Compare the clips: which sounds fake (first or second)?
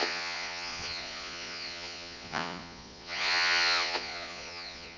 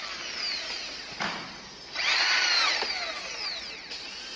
first